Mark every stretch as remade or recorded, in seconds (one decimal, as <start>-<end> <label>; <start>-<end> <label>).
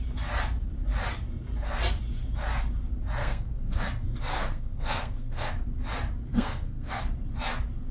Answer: 0.0-3.2 recorded; 3.2-3.8 remade; 3.8-4.3 recorded; 4.3-5.5 remade; 5.5-6.3 recorded; 6.3-7.0 remade; 7.0-7.9 recorded